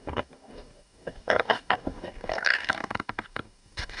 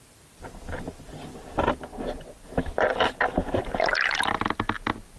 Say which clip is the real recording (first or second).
second